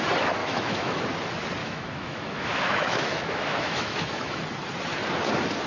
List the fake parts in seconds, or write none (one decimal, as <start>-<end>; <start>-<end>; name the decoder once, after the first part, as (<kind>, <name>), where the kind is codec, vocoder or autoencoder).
0.4-1.0 (autoencoder, DAC-VAE); 1.6-4.4